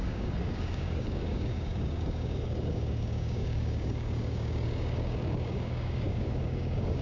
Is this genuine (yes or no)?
no